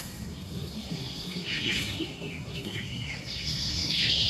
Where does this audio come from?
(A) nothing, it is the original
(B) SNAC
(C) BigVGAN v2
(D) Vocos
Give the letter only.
B